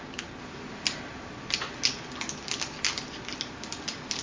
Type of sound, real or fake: real